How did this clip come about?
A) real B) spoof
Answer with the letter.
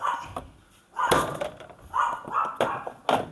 A